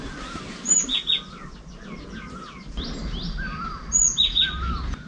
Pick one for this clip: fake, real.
real